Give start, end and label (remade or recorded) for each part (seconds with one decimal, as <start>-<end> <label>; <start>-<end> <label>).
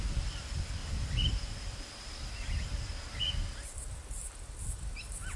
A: 0.0-5.4 recorded